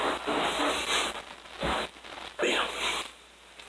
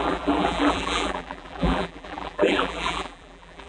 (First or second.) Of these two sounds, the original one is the first